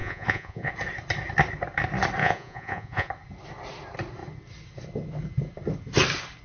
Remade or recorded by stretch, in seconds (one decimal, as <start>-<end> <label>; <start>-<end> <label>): 0.0-0.7 remade; 0.7-2.2 recorded; 2.2-3.1 remade; 3.1-6.4 recorded

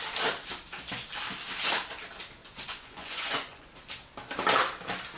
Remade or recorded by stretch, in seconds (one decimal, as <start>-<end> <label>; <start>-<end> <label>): 0.0-2.4 recorded; 2.4-3.7 remade; 3.7-5.2 recorded